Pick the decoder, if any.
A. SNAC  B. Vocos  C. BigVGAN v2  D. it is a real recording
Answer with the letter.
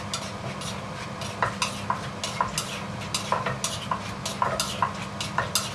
D